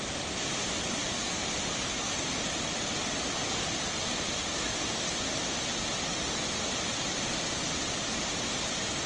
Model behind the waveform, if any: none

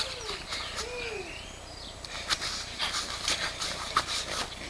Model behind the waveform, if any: none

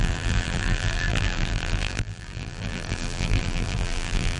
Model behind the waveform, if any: vocoder, BigVGAN v2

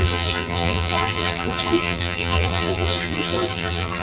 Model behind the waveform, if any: vocoder, BigVGAN v2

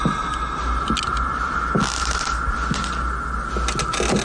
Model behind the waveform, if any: none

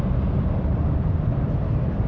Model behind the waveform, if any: none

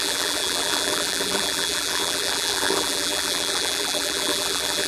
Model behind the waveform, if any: vocoder, BigVGAN v2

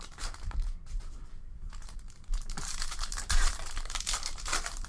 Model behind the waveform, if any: vocoder, BigVGAN v2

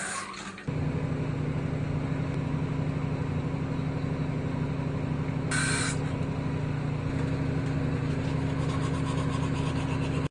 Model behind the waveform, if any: none